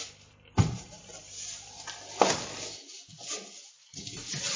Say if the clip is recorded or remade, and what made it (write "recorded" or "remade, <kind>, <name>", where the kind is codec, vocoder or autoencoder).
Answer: recorded